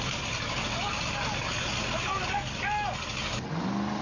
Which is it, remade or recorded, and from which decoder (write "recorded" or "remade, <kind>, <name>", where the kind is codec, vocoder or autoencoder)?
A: recorded